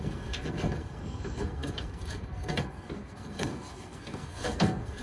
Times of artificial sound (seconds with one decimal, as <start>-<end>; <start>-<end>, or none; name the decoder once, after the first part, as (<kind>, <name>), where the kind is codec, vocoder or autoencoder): 0.0-5.0 (codec, SNAC)